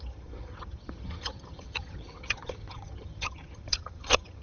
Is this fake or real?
fake